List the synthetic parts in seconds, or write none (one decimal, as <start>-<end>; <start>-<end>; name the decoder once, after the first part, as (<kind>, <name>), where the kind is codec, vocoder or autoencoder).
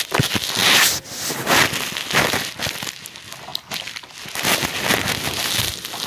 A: none